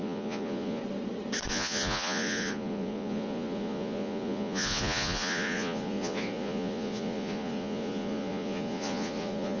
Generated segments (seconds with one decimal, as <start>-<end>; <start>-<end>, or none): 0.0-0.8; 1.5-9.6